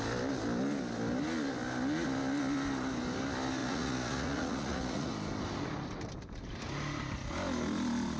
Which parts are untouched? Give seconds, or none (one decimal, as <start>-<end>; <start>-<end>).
0.0-3.6; 5.1-8.2